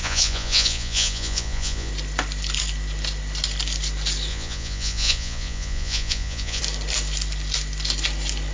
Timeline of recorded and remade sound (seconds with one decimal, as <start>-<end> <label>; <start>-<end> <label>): 0.0-1.9 remade; 1.9-4.3 recorded; 4.3-6.6 remade; 6.6-8.5 recorded